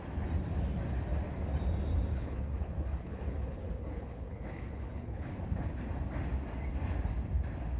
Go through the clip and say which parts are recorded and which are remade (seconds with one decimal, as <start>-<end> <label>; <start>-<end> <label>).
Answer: 0.0-2.1 recorded; 2.1-5.7 remade; 5.7-7.8 recorded